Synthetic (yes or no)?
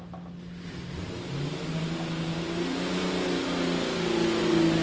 no